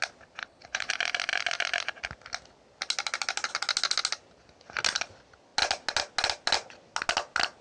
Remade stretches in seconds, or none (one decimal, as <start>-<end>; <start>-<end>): 0.4-0.9